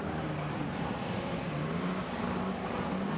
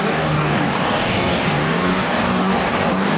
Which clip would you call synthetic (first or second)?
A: second